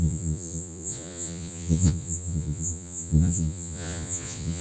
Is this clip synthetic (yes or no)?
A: yes